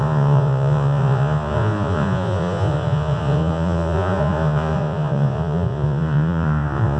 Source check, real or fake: fake